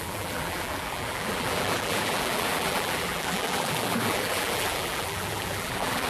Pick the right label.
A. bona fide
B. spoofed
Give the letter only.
B